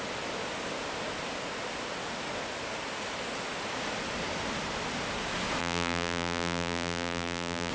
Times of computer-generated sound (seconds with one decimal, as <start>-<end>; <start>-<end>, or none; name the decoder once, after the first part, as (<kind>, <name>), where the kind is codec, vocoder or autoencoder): 5.6-7.7 (vocoder, BigVGAN v2)